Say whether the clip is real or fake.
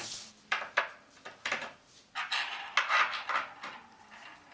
real